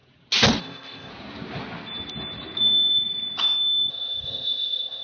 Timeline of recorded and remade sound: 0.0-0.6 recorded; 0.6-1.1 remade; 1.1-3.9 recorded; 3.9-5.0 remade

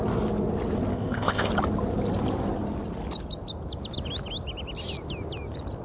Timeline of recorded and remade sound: 0.0-0.9 recorded; 0.9-1.5 remade; 1.5-5.8 recorded

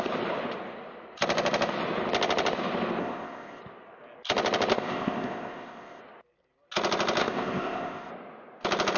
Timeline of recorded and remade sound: 0.0-3.0 recorded; 3.0-3.6 remade; 3.6-4.7 recorded; 4.7-6.0 remade; 6.0-7.2 recorded; 7.2-8.1 remade; 8.1-9.0 recorded

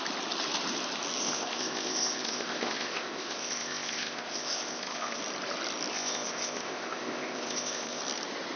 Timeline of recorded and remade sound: 0.0-1.2 recorded; 1.2-5.2 remade; 5.2-5.9 recorded; 5.9-8.0 remade; 8.0-8.6 recorded

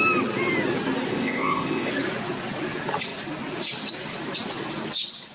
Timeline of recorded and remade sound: 0.0-1.1 recorded; 1.1-1.9 remade; 1.9-5.3 recorded

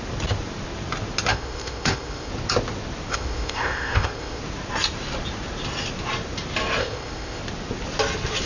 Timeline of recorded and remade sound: 0.0-1.3 recorded; 1.3-2.3 remade; 2.3-3.1 recorded; 3.1-4.4 remade; 4.4-6.8 recorded; 6.8-7.4 remade; 7.4-8.5 recorded

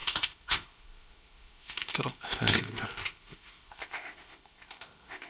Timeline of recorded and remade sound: 0.0-5.3 remade